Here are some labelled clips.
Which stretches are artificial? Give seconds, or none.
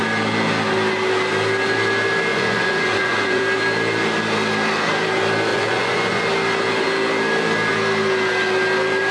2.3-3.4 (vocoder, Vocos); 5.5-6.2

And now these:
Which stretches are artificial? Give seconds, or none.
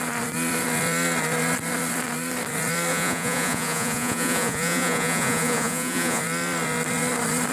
2.9-6.2 (vocoder, Vocos)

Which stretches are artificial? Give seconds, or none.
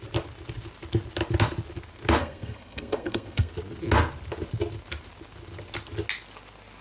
2.2-3.5 (codec, SNAC)